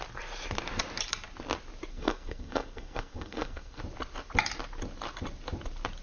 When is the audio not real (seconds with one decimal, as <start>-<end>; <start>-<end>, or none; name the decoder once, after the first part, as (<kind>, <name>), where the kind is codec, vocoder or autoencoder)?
1.9-3.8 (codec, SNAC)